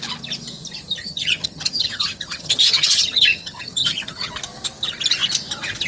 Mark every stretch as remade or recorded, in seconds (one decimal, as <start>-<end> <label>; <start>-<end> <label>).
0.0-1.0 recorded; 1.0-4.3 remade; 4.3-5.9 recorded